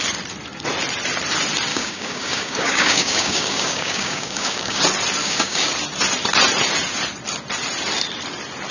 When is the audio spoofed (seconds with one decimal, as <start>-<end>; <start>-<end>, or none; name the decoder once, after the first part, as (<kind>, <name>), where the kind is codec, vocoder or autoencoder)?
1.7-4.8 (codec, DAC); 5.2-5.7